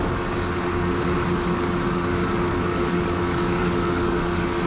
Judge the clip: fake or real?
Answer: fake